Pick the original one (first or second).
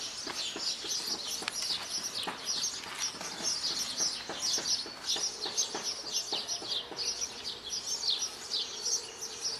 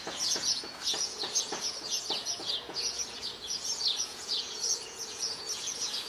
first